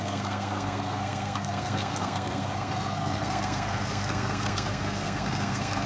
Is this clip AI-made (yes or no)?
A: yes